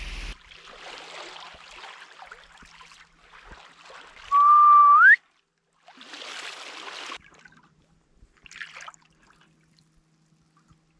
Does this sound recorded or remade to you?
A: recorded